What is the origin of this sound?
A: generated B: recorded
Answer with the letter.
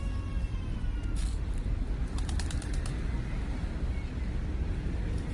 B